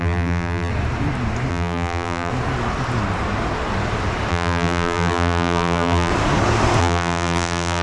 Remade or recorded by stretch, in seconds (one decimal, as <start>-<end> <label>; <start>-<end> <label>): 0.0-0.7 remade; 0.7-1.5 recorded; 1.5-2.3 remade; 2.3-4.3 recorded; 4.3-6.1 remade; 6.1-6.8 recorded; 6.8-7.8 remade